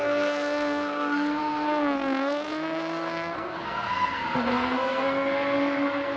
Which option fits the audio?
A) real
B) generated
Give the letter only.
B